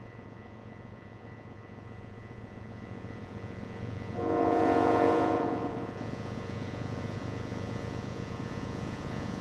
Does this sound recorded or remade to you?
remade